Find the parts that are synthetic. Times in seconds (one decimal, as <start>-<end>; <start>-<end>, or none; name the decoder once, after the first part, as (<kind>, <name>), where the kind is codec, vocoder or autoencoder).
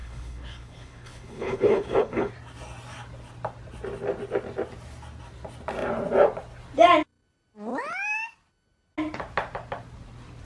0.0-2.3 (codec, HILCodec)